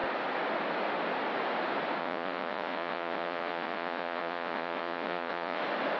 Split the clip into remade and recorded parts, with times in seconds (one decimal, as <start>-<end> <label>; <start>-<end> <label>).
0.0-2.0 recorded; 2.0-5.6 remade; 5.6-6.0 recorded